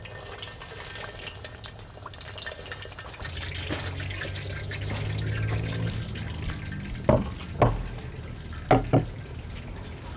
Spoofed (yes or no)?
no